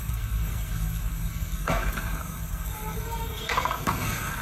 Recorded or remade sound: remade